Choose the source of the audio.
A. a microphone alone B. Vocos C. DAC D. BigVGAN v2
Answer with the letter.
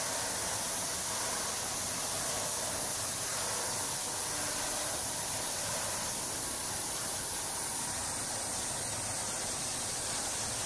A